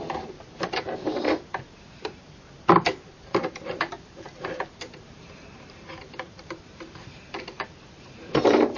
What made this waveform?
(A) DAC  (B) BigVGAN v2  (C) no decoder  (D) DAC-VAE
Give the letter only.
B